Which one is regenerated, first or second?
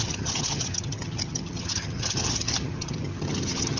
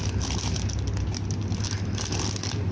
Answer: first